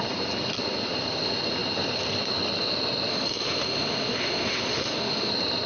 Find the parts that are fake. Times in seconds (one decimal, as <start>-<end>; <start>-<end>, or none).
3.1-5.3